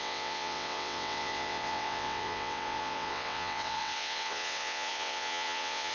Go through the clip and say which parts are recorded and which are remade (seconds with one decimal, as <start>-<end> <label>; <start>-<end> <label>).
0.0-5.9 remade